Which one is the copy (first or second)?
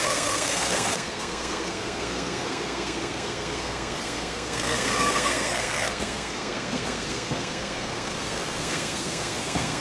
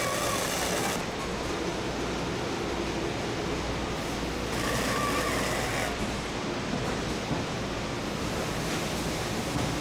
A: first